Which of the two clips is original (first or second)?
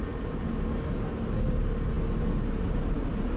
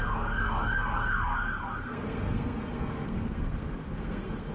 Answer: first